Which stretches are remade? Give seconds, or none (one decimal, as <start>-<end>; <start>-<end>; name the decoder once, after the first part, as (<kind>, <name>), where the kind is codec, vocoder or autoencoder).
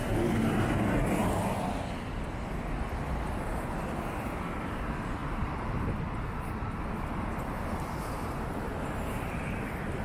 none